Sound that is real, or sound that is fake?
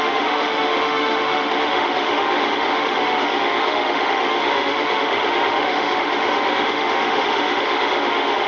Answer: fake